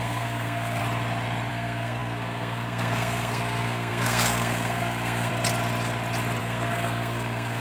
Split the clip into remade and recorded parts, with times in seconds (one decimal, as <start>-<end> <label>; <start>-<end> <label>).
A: 0.0-0.8 remade; 0.8-1.5 recorded; 1.5-5.3 remade; 5.3-6.4 recorded; 6.4-7.6 remade